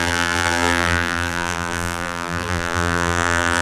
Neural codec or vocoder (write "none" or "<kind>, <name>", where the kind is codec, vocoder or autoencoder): vocoder, BigVGAN v2